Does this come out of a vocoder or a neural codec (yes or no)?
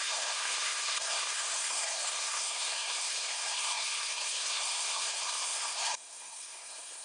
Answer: yes